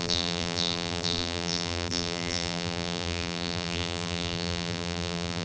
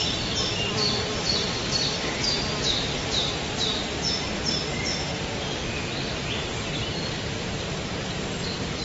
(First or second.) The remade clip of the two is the first